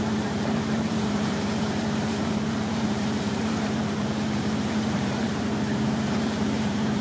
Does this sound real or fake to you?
fake